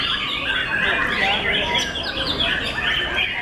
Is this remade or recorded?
recorded